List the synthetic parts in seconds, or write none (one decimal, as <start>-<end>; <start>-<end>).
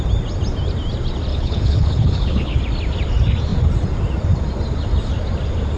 1.3-2.6